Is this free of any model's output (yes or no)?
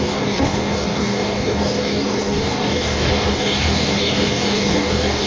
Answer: no